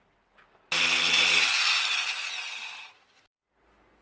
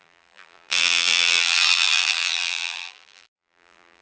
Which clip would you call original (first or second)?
first